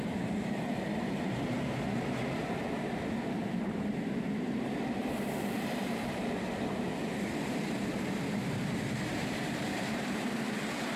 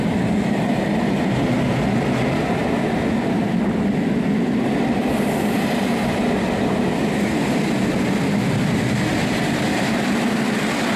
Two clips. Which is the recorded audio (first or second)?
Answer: second